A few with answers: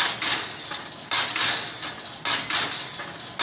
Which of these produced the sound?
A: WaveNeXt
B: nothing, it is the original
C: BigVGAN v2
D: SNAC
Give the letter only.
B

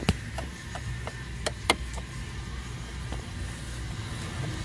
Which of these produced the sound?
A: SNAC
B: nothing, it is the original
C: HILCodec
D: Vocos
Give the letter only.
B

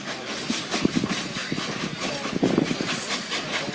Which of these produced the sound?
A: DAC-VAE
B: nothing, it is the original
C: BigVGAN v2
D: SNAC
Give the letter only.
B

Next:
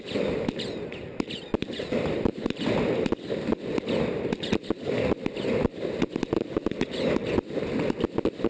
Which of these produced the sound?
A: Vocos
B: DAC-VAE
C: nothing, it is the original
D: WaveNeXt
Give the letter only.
C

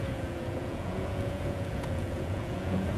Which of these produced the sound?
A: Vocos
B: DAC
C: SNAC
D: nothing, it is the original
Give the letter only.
A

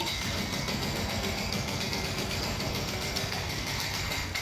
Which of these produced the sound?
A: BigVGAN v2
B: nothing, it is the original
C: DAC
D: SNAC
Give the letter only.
D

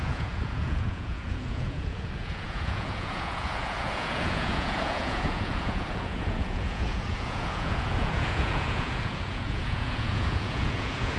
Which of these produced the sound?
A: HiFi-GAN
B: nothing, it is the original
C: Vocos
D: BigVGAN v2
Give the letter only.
C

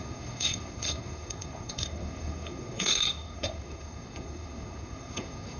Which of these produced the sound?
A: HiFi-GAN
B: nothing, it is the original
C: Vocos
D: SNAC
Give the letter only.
D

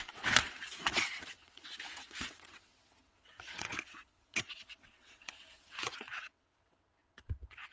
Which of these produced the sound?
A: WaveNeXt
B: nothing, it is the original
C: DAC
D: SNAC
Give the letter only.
A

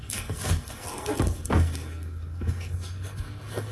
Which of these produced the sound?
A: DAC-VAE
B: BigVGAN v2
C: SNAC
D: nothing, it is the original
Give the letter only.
C